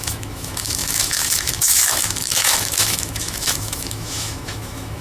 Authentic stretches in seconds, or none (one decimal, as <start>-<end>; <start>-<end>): none

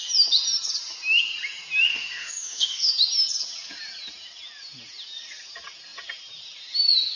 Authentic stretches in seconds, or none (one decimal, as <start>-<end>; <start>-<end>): 0.0-1.9; 2.9-7.2

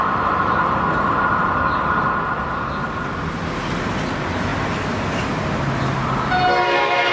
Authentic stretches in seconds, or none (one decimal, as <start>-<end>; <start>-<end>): 0.0-7.1

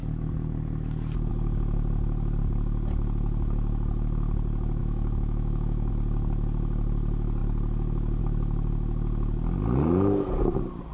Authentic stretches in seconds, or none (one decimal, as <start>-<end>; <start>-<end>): 0.0-4.8; 5.9-10.9

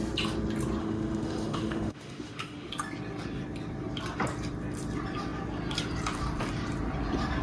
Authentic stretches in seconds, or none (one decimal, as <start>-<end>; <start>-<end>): 0.0-0.8; 2.7-7.4